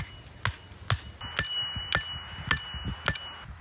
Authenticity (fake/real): real